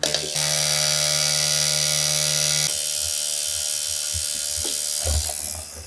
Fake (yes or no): no